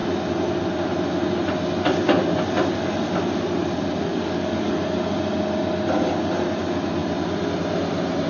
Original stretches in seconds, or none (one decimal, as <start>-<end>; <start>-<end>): 0.0-4.1; 4.7-8.3